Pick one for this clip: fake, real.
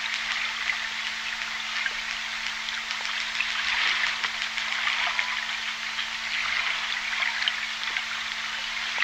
real